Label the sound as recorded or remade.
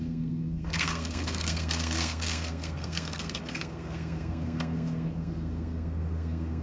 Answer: remade